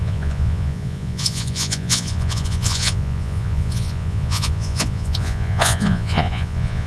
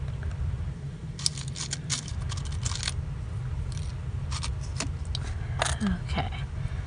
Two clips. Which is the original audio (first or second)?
second